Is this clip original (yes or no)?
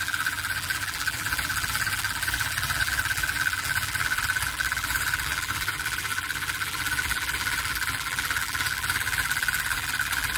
no